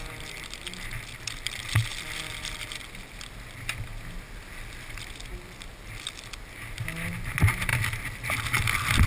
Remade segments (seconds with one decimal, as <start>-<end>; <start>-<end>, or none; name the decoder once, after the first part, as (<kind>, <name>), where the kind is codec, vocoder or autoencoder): none